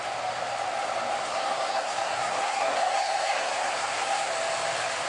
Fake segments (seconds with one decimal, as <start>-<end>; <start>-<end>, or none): 1.2-4.3